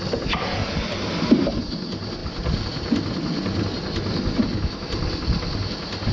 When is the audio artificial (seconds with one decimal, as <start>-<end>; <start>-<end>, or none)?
none